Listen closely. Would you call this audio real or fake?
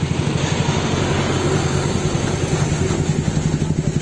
real